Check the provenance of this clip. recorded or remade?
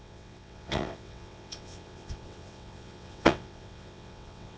remade